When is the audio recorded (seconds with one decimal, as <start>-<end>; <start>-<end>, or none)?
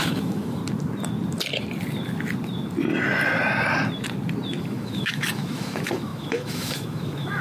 0.6-4.6